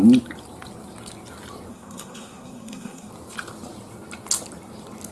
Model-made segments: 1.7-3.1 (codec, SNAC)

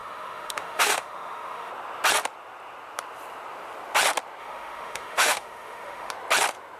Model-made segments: 0.0-1.7 (autoencoder, DAC-VAE); 4.4-6.1

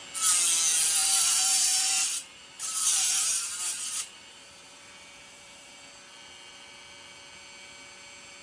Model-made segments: 1.0-5.7 (vocoder, BigVGAN v2)